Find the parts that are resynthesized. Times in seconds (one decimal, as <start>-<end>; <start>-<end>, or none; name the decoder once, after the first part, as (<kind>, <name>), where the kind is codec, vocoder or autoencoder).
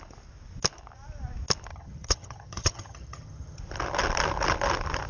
1.7-3.6 (vocoder, HiFi-GAN)